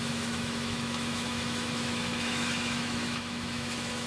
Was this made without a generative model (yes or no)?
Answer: no